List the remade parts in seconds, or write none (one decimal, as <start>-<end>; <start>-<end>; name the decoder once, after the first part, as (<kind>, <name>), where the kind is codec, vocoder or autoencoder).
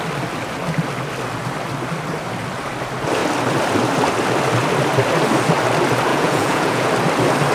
6.1-6.9 (vocoder, Vocos)